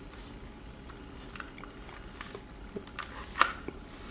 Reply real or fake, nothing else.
real